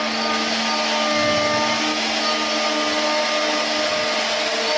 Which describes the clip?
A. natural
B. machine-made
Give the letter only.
A